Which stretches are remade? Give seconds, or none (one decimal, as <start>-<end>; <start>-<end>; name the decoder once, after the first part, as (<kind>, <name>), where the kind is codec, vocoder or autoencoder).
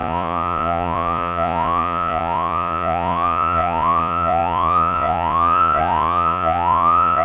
0.0-7.2 (vocoder, Vocos)